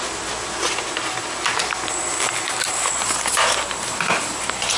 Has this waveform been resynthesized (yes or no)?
no